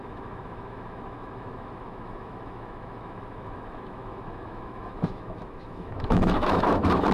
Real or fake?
fake